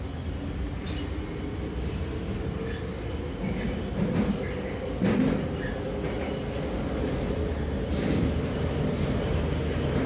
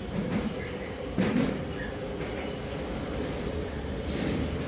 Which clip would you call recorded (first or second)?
first